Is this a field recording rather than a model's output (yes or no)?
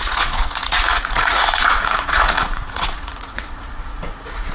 no